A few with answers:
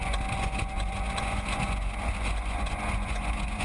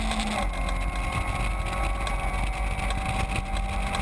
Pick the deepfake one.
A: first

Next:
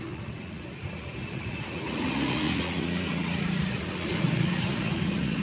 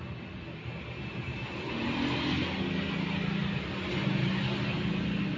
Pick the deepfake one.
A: first